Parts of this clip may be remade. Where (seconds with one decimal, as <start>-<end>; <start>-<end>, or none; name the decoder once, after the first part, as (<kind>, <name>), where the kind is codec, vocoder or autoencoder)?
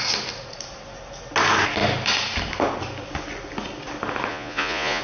4.3-5.0 (vocoder, Vocos)